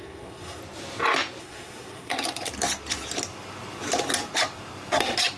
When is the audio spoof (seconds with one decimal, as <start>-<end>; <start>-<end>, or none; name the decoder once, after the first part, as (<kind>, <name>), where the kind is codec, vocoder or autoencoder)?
0.0-0.6 (codec, SNAC); 1.4-2.1